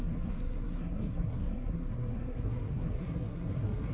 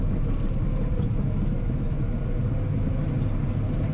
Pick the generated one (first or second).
first